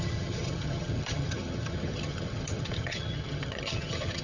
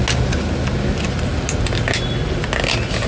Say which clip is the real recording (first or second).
second